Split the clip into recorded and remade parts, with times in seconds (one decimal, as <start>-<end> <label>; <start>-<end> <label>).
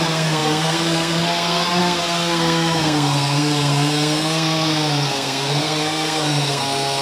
0.0-7.0 remade